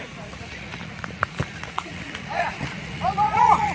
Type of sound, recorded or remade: remade